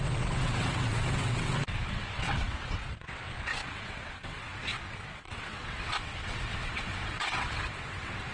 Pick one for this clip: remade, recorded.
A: remade